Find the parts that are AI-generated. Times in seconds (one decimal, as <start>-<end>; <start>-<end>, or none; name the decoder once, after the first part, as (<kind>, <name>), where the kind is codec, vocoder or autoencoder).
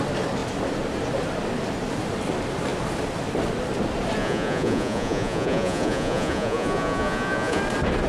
4.2-7.6 (vocoder, Vocos)